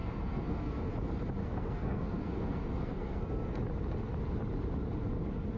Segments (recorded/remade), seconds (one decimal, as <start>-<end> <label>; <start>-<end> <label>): 0.0-0.9 remade; 0.9-1.4 recorded; 1.4-3.6 remade; 3.6-5.6 recorded